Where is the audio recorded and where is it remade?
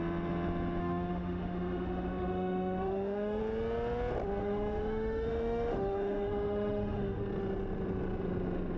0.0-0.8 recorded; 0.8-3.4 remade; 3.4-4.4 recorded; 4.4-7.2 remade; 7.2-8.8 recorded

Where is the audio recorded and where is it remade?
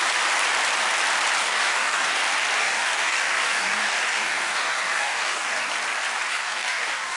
0.0-1.4 recorded; 1.4-2.2 remade; 2.2-2.6 recorded; 2.6-5.7 remade; 5.7-6.3 recorded; 6.3-7.2 remade